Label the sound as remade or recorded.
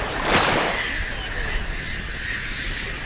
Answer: recorded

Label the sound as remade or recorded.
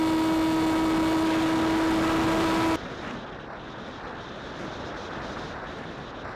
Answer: recorded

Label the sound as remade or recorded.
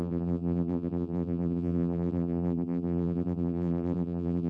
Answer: remade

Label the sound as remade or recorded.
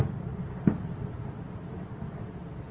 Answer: recorded